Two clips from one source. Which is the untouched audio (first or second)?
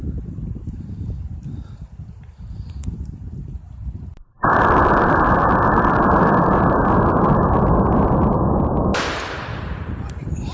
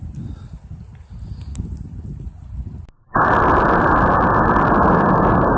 second